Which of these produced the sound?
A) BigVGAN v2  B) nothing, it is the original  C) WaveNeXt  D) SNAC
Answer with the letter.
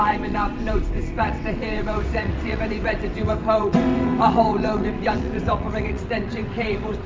C